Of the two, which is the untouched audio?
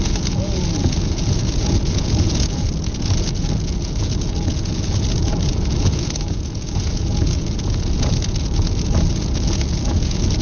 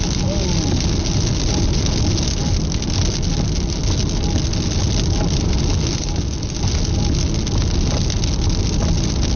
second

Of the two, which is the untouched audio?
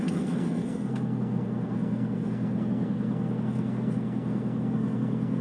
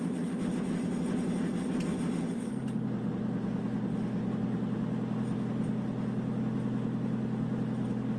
second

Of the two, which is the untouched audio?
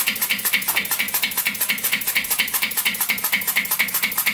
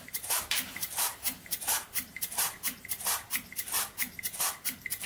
first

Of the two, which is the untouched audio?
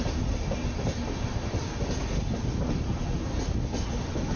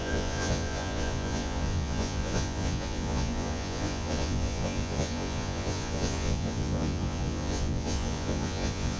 first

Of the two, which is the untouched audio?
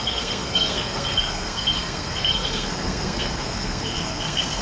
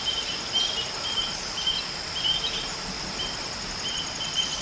second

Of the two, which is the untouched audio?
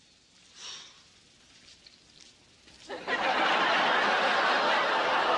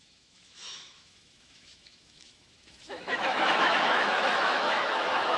first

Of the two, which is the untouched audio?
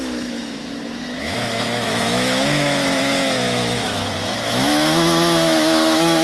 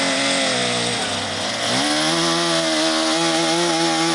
second